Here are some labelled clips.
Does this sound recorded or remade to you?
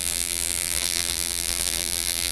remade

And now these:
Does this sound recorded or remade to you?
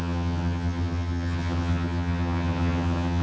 remade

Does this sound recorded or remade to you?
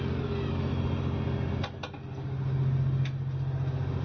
recorded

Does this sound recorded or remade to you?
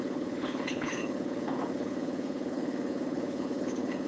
remade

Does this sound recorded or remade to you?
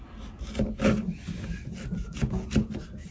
recorded